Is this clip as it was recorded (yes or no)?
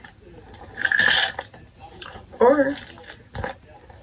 yes